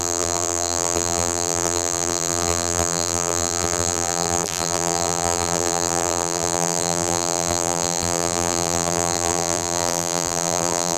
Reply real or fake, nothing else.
fake